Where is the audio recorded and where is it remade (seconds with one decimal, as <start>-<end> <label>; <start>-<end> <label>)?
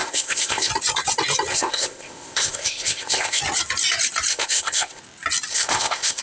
0.0-0.7 remade; 0.7-1.5 recorded; 1.5-3.4 remade; 3.4-4.3 recorded; 4.3-5.0 remade; 5.0-5.5 recorded; 5.5-6.2 remade